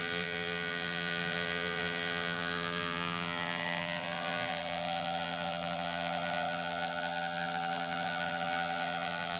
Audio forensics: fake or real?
fake